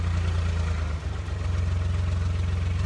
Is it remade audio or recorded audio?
recorded